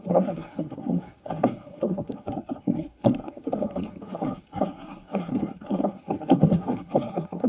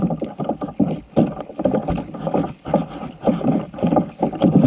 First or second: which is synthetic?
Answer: first